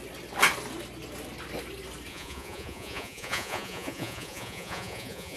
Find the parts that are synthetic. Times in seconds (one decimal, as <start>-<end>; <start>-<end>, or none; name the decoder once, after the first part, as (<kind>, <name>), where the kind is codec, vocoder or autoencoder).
2.1-5.4 (vocoder, Vocos)